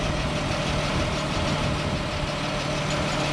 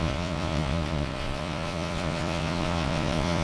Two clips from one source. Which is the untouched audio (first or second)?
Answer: first